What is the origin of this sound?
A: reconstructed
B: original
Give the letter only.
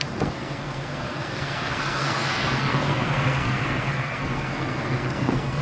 A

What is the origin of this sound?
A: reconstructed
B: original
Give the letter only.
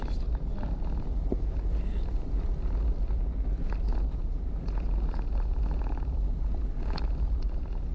B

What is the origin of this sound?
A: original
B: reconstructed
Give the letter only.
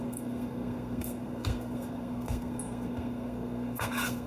B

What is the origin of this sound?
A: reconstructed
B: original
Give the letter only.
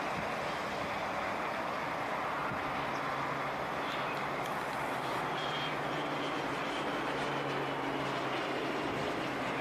B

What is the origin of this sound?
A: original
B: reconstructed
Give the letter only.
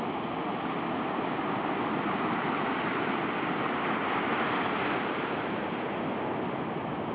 A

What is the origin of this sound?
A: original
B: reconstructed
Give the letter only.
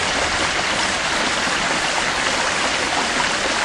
A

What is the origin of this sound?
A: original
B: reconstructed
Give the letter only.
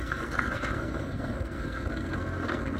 B